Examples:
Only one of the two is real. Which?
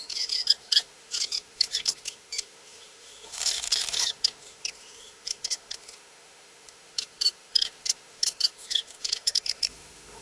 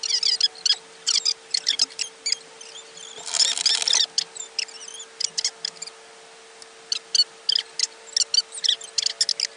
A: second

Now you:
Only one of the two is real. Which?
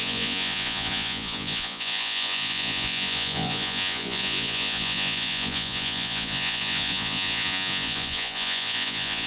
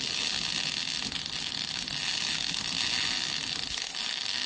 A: second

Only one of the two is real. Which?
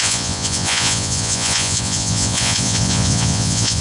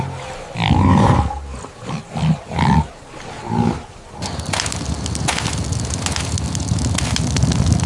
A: second